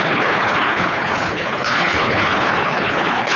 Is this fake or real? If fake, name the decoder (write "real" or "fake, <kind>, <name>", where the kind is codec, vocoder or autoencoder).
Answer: fake, codec, HILCodec